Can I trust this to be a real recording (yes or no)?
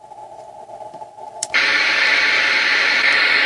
no